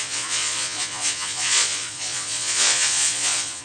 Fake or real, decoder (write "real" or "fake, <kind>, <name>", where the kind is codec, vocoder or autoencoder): fake, vocoder, Vocos